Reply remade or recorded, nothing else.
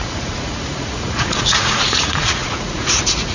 remade